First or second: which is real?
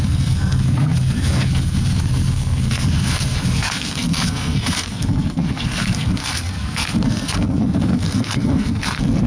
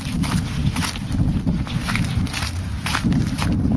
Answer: second